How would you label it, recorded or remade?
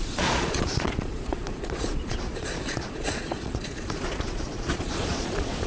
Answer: remade